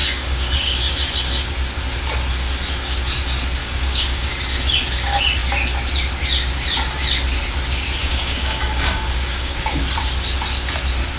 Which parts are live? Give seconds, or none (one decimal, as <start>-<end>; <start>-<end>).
0.9-3.6; 4.3-8.0; 9.8-11.2